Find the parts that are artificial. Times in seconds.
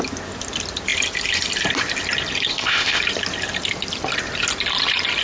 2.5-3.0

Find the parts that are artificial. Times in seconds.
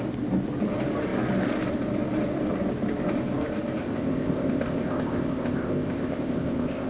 3.8-6.9